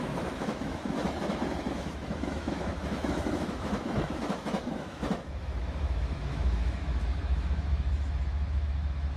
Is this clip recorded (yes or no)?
no